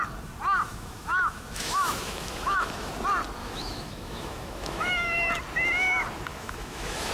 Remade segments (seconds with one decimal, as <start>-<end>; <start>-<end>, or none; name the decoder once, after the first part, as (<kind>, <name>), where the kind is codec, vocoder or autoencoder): 0.7-2.9 (autoencoder, DAC-VAE); 3.4-5.3; 6.3-7.1